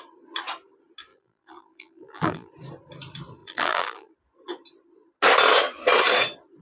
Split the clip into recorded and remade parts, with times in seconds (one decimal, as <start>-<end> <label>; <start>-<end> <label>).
0.0-1.1 recorded; 1.1-2.5 remade; 2.5-3.4 recorded; 3.4-4.1 remade; 4.1-6.6 recorded